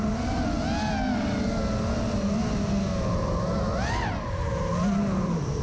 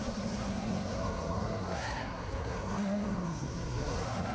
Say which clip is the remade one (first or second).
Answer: second